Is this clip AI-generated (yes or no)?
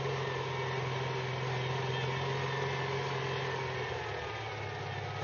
no